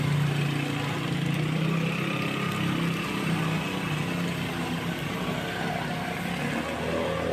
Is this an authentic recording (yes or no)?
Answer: yes